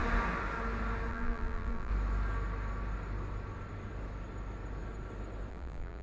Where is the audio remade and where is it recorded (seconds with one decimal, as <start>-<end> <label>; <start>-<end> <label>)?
0.0-1.1 recorded; 1.1-1.9 remade; 1.9-5.5 recorded; 5.5-6.0 remade